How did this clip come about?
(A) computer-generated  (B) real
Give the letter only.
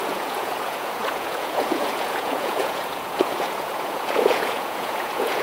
A